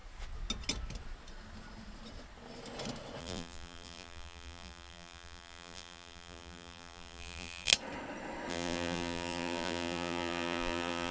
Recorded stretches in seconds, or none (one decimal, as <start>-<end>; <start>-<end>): 0.0-3.2; 7.7-8.5